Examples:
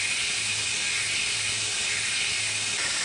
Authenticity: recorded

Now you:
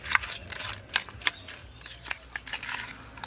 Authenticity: recorded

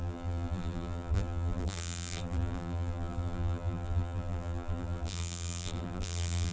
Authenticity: remade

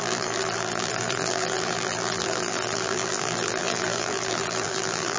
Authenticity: remade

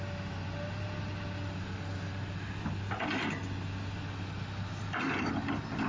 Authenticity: recorded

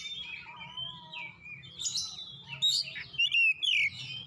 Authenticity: recorded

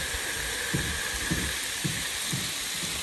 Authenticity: recorded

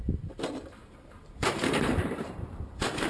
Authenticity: remade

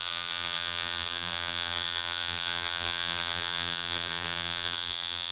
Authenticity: remade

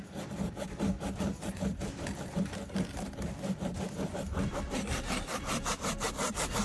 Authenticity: remade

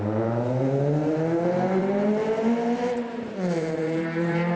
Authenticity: remade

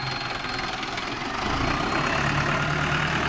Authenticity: recorded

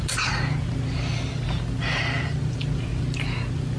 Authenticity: recorded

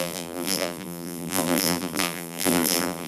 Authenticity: remade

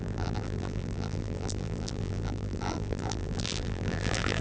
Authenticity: remade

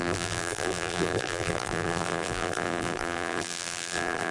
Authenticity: remade